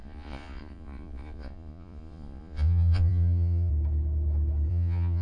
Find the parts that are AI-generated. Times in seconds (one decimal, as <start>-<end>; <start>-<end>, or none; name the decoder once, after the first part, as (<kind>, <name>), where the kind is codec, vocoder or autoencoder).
0.0-3.7 (vocoder, Vocos); 4.7-5.2